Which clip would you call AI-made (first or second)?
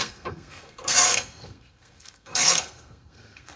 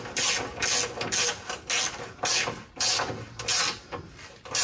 first